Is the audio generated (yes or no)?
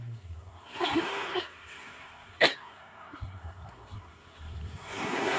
yes